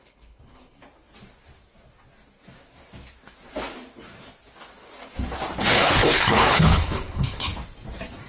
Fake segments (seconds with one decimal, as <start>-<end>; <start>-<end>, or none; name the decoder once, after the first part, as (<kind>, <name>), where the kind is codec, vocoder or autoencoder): 0.0-0.8 (codec, HILCodec); 5.7-7.5